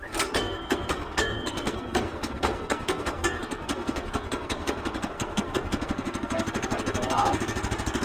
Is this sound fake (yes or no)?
yes